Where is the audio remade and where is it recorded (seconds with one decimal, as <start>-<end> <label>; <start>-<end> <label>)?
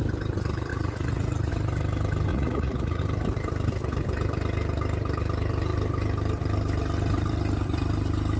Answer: 0.0-0.7 recorded; 0.7-1.5 remade; 1.5-2.3 recorded; 2.3-3.0 remade; 3.0-8.4 recorded